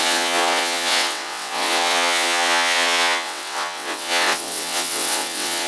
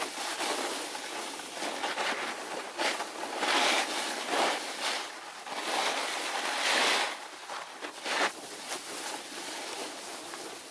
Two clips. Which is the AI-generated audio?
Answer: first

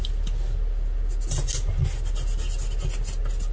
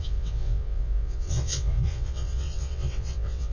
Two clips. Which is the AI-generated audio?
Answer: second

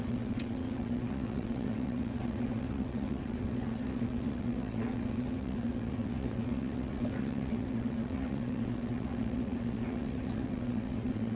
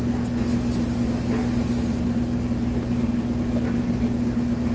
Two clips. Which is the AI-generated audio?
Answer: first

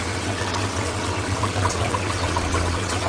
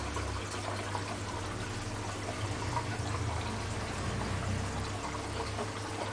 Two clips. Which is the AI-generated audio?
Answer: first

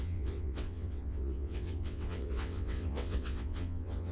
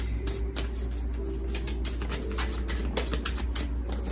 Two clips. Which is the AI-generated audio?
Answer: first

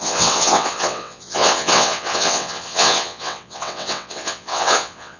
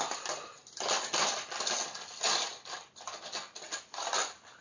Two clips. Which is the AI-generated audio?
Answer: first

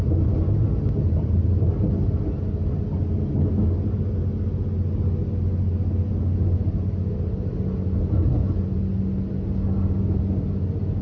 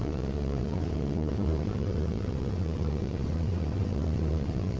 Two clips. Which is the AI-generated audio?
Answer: second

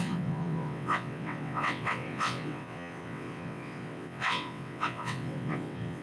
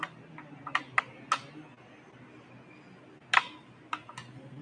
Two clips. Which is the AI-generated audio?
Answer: first